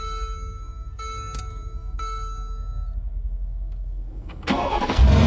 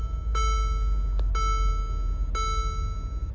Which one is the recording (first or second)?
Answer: second